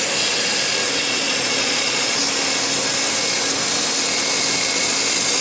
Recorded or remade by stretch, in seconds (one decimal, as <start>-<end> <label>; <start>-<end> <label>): 0.0-1.0 recorded; 1.0-2.2 remade; 2.2-5.4 recorded